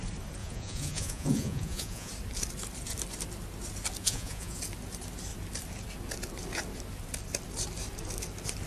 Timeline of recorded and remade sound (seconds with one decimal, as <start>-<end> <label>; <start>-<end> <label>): 0.0-0.4 recorded; 0.4-2.1 remade; 2.1-4.0 recorded; 4.0-4.6 remade; 4.6-8.7 recorded